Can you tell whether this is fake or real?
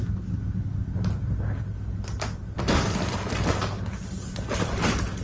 real